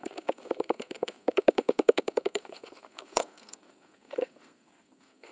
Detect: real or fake fake